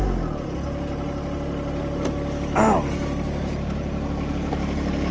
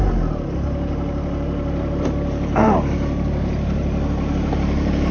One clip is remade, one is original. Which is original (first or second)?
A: first